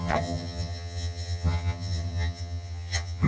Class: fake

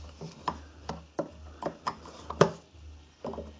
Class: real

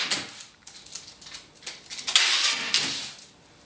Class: real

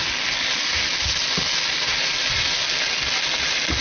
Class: real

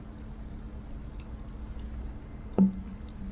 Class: real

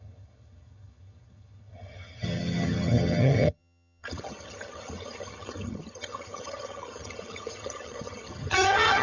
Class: fake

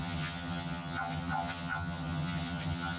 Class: fake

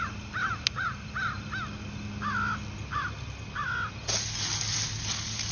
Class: real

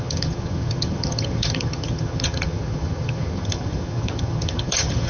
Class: fake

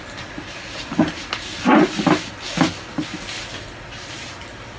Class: real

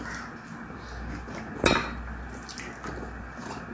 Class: real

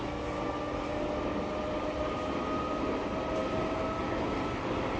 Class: real